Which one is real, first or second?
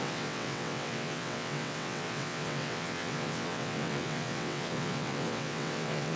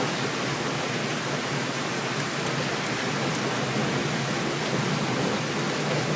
second